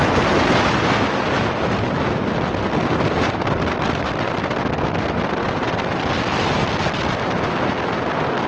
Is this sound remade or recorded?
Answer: recorded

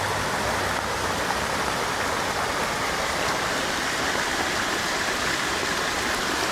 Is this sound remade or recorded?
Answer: recorded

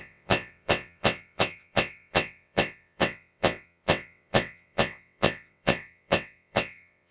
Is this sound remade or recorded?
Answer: remade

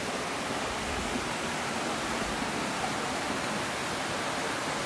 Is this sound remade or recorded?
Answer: recorded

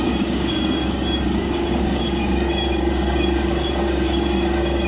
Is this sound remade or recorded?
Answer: remade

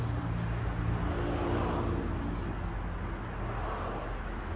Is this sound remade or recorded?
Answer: recorded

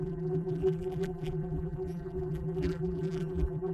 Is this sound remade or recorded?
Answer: remade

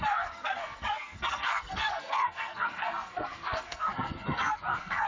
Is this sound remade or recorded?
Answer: remade